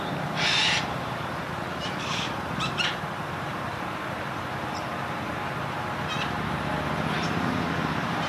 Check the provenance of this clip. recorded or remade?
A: remade